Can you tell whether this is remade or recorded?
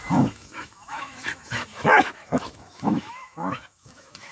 remade